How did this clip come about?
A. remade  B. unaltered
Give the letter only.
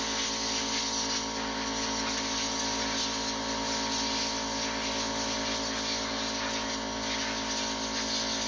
B